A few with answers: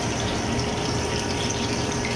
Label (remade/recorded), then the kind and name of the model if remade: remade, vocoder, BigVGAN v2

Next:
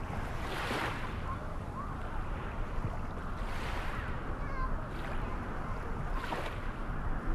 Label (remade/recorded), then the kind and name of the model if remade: recorded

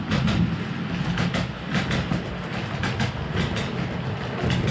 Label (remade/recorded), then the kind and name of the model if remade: recorded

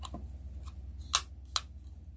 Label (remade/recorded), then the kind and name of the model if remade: recorded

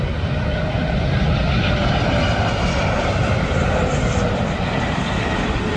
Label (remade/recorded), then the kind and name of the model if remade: remade, vocoder, BigVGAN v2